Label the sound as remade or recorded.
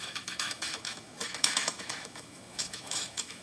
remade